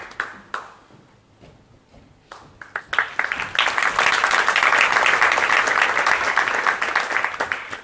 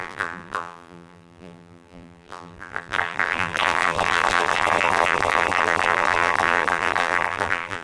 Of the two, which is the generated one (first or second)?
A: second